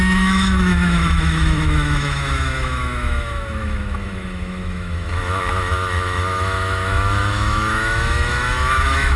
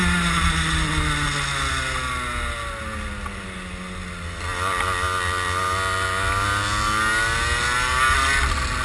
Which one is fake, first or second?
first